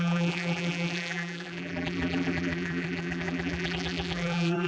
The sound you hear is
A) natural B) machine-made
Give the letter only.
B